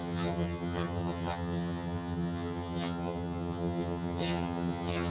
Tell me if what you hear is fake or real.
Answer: fake